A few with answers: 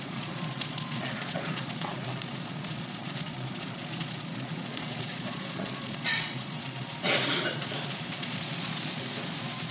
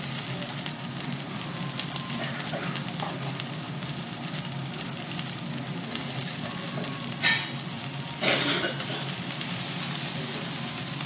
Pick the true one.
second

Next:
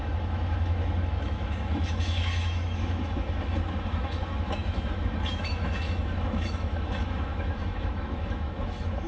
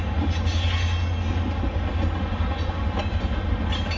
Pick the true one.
second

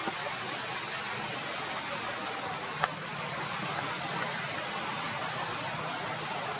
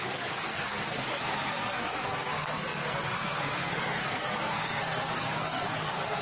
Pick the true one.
first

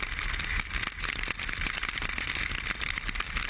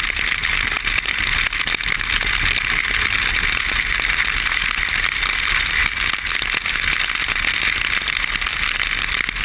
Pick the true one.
second